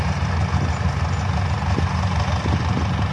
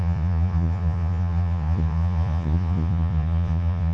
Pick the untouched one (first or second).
first